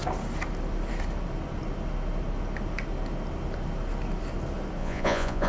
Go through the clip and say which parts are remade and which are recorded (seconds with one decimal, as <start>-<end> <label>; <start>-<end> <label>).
0.0-4.8 recorded; 4.8-5.5 remade